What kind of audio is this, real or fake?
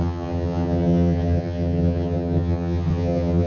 fake